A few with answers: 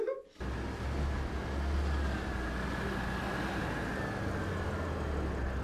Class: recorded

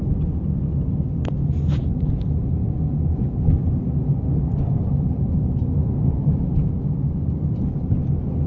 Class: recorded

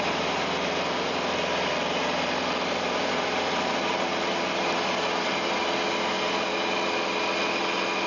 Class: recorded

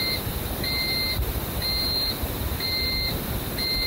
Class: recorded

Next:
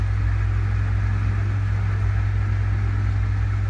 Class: recorded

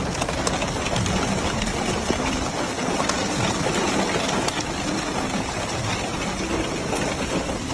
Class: recorded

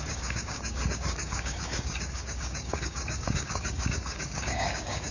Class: remade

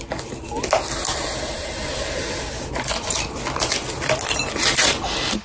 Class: recorded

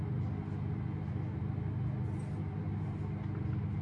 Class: recorded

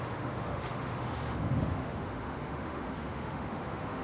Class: remade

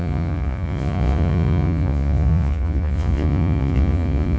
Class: remade